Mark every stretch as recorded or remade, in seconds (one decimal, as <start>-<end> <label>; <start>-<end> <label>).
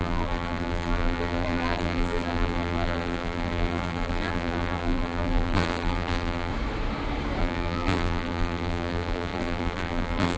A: 0.0-6.5 remade; 6.5-7.4 recorded; 7.4-10.4 remade